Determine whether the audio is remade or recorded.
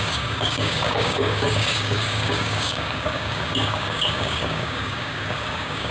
remade